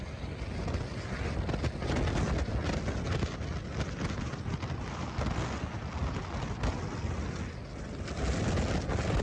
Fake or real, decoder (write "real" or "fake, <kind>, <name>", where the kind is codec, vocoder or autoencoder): real